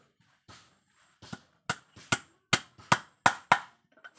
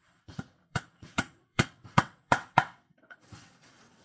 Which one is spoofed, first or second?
second